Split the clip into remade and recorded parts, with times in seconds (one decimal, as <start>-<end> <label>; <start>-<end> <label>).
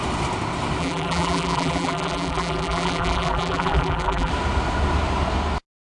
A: 0.0-0.8 recorded; 0.8-4.3 remade; 4.3-5.9 recorded